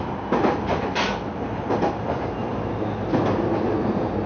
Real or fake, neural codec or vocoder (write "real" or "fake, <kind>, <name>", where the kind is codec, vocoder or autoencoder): real